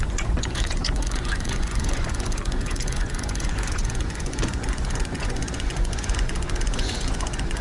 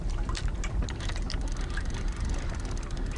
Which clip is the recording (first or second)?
second